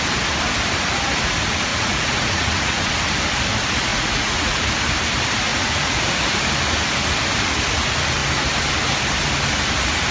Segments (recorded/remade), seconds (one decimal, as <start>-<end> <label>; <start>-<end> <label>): 0.0-1.7 recorded; 1.7-2.9 remade; 2.9-3.9 recorded; 3.9-4.7 remade; 4.7-5.5 recorded; 5.5-6.4 remade; 6.4-10.1 recorded

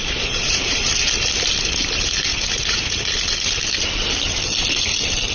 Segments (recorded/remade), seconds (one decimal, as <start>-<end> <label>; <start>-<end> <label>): 0.0-0.9 remade; 0.9-2.3 recorded; 2.3-3.0 remade; 3.0-5.3 recorded

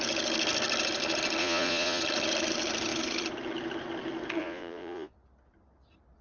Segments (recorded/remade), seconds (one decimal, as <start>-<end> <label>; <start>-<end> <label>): 0.0-1.4 recorded; 1.4-2.0 remade; 2.0-4.4 recorded; 4.4-5.1 remade; 5.1-6.2 recorded

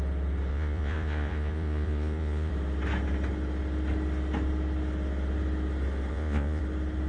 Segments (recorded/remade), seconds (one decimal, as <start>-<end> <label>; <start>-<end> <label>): 0.0-0.5 recorded; 0.5-2.5 remade; 2.5-6.1 recorded; 6.1-6.6 remade; 6.6-7.1 recorded

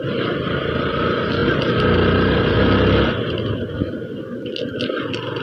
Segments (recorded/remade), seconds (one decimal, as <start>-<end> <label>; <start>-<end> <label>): 0.0-5.4 recorded

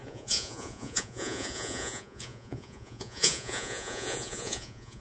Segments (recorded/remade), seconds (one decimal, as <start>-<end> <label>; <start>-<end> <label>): 0.0-5.0 remade

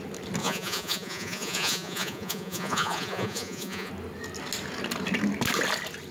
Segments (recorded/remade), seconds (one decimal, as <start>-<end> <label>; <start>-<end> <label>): 0.0-0.4 recorded; 0.4-3.9 remade; 3.9-6.1 recorded